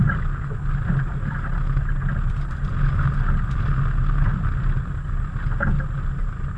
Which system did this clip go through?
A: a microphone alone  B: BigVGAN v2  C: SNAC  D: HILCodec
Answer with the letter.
A